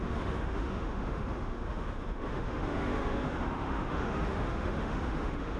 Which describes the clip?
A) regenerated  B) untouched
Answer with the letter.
A